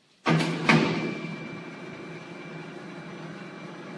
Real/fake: real